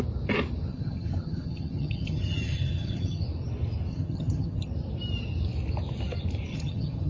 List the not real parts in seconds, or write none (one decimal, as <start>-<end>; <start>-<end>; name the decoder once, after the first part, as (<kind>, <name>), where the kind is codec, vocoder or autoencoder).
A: 0.7-3.2 (vocoder, HiFi-GAN); 3.9-4.7; 6.5-7.1